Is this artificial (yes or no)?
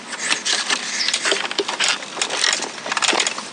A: no